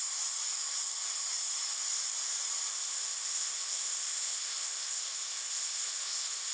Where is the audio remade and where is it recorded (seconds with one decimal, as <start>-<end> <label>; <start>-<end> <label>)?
0.0-2.7 recorded; 2.7-6.5 remade